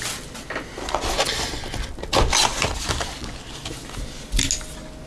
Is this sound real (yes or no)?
yes